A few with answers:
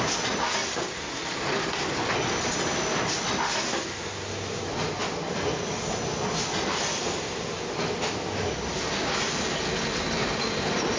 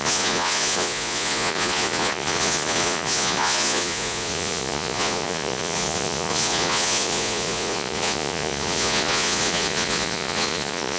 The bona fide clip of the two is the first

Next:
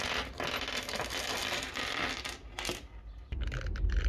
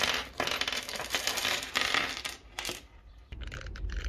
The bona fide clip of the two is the first